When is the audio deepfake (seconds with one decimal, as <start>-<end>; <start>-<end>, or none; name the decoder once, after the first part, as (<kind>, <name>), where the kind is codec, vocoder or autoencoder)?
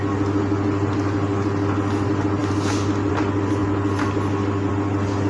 none